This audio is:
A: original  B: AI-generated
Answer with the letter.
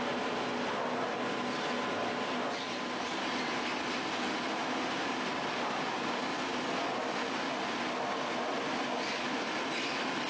A